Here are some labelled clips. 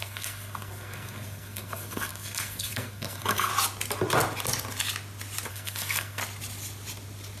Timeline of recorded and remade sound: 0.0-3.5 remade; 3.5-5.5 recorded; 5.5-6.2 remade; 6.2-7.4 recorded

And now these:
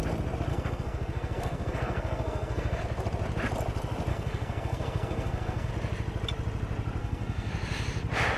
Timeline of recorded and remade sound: 0.0-0.5 recorded; 0.5-2.8 remade; 2.8-4.1 recorded; 4.1-5.7 remade; 5.7-7.0 recorded; 7.0-7.5 remade; 7.5-8.4 recorded

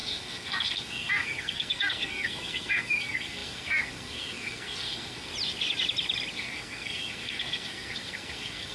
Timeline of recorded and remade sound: 0.0-5.3 remade; 5.3-6.3 recorded; 6.3-8.7 remade

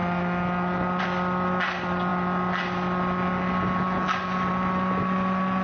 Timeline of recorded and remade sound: 0.0-5.6 recorded

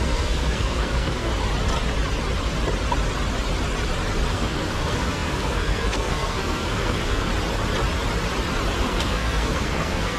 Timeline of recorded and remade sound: 0.0-1.3 remade; 1.3-4.3 recorded; 4.3-7.3 remade; 7.3-8.8 recorded; 8.8-10.2 remade

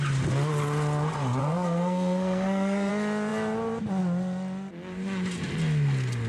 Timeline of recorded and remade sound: 0.0-1.4 recorded; 1.4-2.9 remade; 2.9-6.3 recorded